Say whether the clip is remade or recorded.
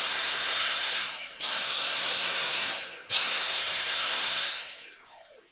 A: remade